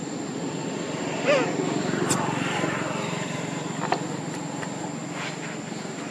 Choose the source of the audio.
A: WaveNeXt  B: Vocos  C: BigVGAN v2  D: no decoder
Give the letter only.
D